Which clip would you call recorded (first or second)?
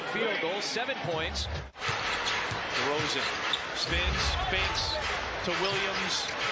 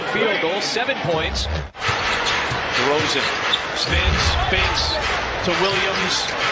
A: first